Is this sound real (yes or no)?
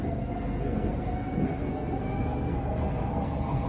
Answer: no